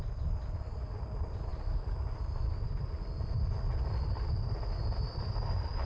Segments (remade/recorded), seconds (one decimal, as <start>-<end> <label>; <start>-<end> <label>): 0.0-5.9 recorded